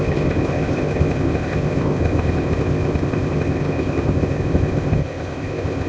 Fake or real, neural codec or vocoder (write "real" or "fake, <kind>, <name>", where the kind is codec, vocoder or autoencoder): fake, codec, ZipCodec